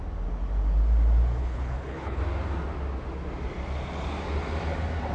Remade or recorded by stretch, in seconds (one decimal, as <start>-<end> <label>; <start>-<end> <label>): 0.0-1.4 recorded; 1.4-2.2 remade; 2.2-5.1 recorded